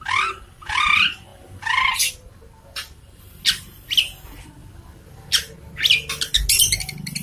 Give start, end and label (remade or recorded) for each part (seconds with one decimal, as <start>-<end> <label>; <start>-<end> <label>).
0.0-7.2 recorded